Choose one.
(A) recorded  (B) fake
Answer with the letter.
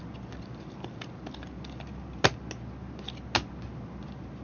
A